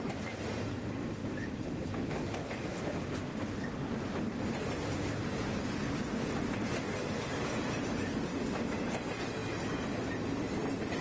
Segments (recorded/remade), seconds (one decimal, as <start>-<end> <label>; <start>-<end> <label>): 0.0-11.0 recorded